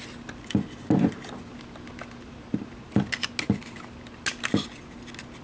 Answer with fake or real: real